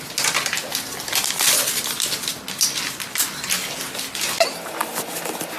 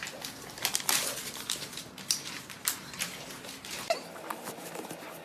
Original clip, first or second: first